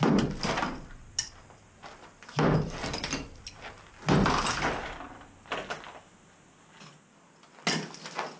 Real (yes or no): yes